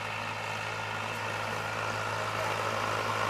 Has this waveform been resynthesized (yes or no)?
no